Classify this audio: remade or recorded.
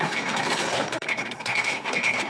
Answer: remade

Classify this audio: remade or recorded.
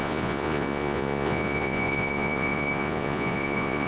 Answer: remade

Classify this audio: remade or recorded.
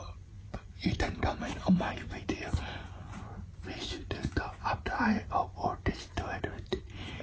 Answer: remade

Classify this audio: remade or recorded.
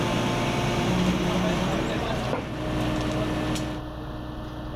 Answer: recorded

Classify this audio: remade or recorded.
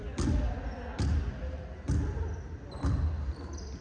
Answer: recorded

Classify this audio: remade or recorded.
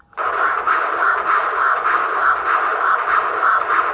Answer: recorded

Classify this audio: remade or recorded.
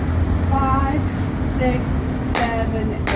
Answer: recorded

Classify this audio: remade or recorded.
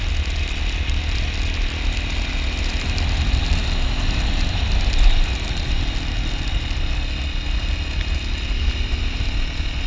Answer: recorded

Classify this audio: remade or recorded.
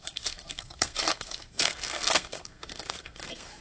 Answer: remade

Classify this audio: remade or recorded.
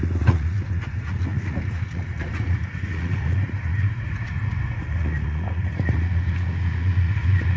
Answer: remade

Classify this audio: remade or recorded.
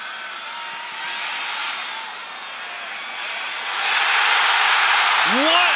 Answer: recorded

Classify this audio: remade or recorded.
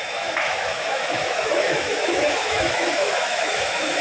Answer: remade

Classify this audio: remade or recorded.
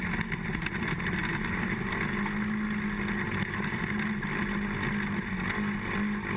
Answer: recorded